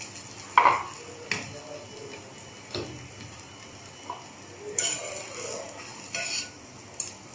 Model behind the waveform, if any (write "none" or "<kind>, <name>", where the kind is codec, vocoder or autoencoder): none